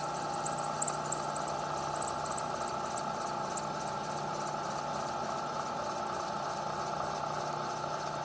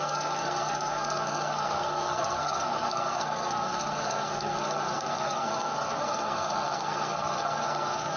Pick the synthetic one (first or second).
second